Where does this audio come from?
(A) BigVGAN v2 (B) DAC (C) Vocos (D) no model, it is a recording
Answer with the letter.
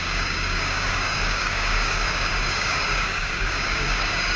B